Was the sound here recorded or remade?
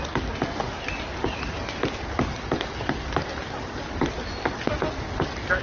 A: recorded